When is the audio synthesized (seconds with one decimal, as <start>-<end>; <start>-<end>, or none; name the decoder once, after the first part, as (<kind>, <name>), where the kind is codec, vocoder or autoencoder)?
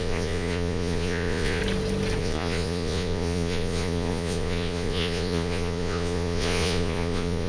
0.0-1.6 (vocoder, Vocos); 2.2-7.5